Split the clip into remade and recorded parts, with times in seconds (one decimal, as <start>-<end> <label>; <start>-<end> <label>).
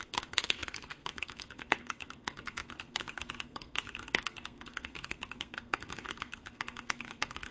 0.0-7.5 remade